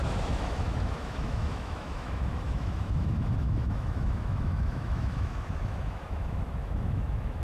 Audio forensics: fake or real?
fake